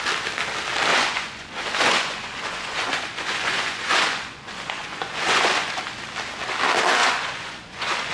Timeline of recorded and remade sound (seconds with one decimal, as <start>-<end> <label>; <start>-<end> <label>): 0.0-0.9 recorded; 0.9-5.8 remade; 5.8-7.0 recorded; 7.0-8.1 remade